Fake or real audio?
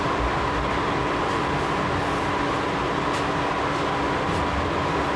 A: real